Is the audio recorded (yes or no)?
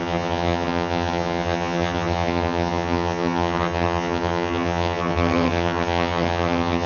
no